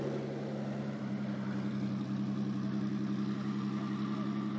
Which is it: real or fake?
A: real